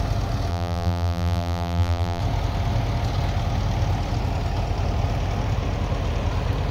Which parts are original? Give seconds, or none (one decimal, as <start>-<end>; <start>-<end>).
0.0-0.5; 2.2-6.7